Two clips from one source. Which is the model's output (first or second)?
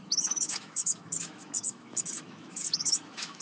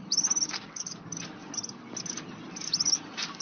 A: first